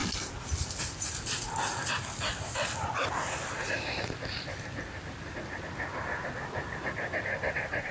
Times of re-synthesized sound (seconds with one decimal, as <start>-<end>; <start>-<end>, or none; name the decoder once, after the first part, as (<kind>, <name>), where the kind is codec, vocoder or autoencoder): none

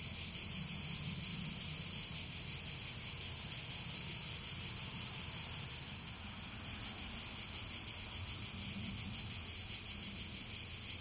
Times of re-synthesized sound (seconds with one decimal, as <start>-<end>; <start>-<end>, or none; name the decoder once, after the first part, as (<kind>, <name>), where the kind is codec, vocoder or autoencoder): 1.3-3.5 (vocoder, BigVGAN v2); 4.2-5.8

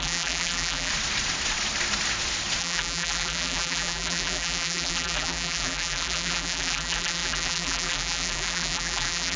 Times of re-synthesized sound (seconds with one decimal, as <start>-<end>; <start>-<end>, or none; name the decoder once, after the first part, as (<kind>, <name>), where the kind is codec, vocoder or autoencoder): 0.0-0.9 (vocoder, BigVGAN v2); 2.6-9.4

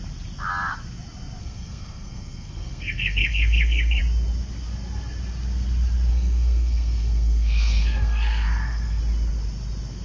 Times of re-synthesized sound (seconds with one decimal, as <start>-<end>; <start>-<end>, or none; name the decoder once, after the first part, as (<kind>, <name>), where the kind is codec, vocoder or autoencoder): 1.4-4.0 (codec, SNAC); 6.1-9.0

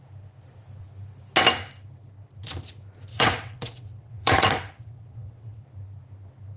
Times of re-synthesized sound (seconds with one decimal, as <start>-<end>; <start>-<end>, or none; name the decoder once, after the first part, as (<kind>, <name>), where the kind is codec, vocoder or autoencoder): 3.1-5.6 (vocoder, WaveNeXt)

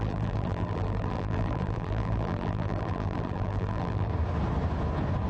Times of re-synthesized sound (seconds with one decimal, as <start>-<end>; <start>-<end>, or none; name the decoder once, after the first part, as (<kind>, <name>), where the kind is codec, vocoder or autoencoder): 0.0-4.1 (vocoder, BigVGAN v2)